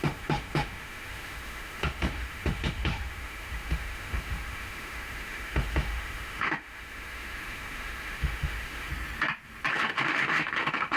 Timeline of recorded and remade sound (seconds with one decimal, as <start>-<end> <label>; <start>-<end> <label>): 0.0-8.9 remade; 8.9-9.7 recorded; 9.7-11.0 remade